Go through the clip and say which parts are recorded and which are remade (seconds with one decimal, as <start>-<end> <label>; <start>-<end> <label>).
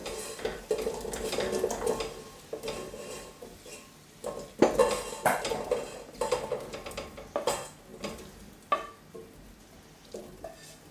0.0-1.3 remade; 1.3-10.9 recorded